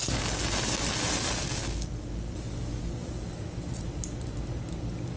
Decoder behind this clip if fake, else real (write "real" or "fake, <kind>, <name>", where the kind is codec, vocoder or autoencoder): real